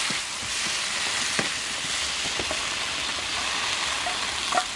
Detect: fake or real real